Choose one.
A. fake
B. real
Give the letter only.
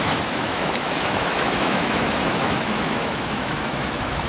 A